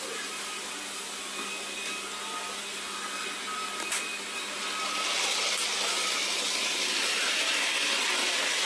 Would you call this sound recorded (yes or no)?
yes